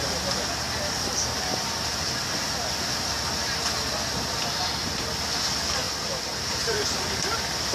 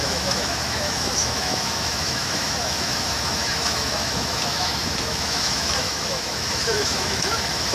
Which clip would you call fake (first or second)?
second